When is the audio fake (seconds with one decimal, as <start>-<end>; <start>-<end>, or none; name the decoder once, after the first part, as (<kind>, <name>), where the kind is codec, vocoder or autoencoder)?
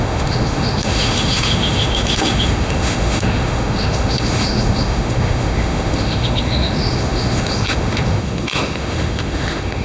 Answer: 0.0-9.8 (autoencoder, DAC-VAE)